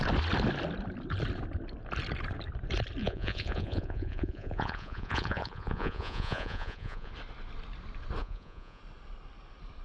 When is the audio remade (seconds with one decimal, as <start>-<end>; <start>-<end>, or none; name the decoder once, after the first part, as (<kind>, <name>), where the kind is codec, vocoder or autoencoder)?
3.0-7.1 (vocoder, Vocos); 8.2-8.8